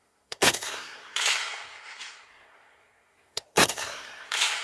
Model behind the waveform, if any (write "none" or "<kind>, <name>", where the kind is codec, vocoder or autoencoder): codec, SNAC